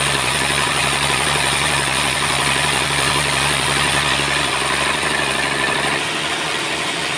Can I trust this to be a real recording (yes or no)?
no